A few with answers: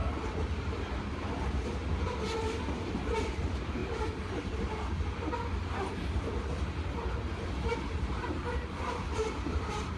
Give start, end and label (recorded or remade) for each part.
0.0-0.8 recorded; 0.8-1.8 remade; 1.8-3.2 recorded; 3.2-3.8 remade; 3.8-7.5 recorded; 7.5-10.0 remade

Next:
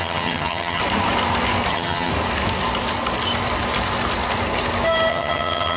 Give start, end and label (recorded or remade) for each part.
0.0-0.8 remade; 0.8-1.7 recorded; 1.7-2.1 remade; 2.1-5.1 recorded; 5.1-5.8 remade

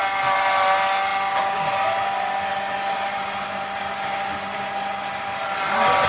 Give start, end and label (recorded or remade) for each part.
0.0-6.1 recorded